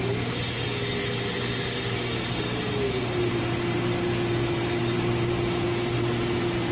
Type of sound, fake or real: real